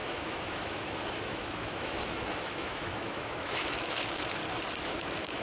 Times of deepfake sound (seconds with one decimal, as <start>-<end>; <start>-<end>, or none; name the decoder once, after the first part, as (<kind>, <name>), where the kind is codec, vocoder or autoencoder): 0.0-4.4 (autoencoder, DAC-VAE); 4.9-5.4